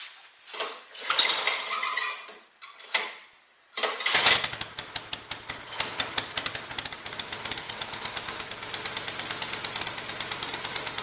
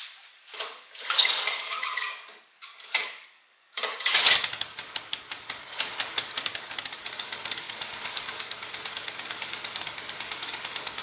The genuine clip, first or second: first